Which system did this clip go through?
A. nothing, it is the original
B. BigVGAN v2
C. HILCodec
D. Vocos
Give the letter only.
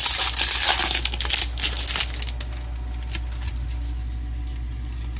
A